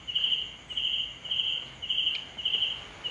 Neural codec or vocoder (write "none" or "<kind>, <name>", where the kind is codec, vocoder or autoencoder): none